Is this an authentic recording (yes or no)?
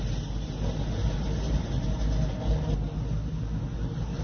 yes